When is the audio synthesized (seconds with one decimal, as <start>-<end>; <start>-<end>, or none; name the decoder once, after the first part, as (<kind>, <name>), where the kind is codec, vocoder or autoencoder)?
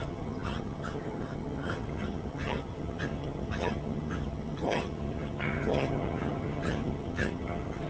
0.0-7.9 (vocoder, HiFi-GAN)